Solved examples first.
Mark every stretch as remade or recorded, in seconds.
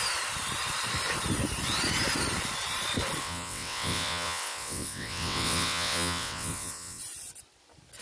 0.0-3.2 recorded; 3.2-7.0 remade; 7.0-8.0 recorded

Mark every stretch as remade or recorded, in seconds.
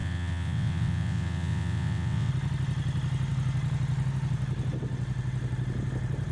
0.0-2.3 remade; 2.3-6.3 recorded